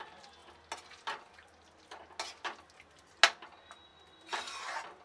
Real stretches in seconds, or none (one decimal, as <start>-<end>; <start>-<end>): 0.0-5.0